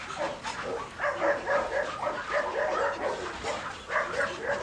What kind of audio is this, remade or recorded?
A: recorded